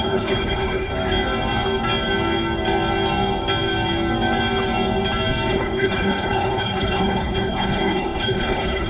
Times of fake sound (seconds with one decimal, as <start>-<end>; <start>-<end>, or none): 0.0-0.9; 5.5-8.9